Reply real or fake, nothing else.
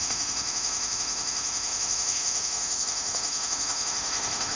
fake